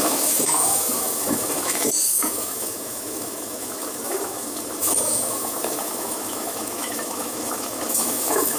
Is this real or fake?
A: fake